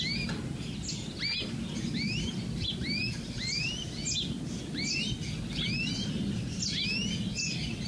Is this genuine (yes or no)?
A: yes